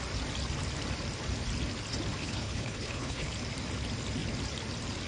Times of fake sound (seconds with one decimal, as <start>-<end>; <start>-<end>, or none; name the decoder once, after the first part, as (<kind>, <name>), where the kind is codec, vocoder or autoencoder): 2.2-3.3 (codec, HILCodec)